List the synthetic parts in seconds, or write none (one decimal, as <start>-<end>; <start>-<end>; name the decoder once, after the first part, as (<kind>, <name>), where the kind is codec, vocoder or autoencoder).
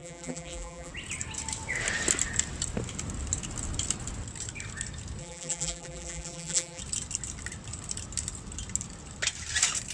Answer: 0.0-0.9 (vocoder, BigVGAN v2); 5.2-6.8